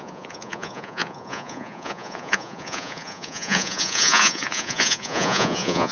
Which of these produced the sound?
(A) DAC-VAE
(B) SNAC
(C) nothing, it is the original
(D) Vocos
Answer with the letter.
D